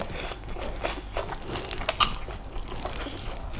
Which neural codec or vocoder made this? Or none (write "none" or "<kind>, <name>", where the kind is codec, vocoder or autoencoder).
none